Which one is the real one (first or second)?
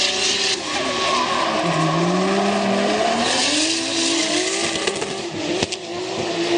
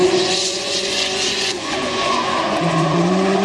first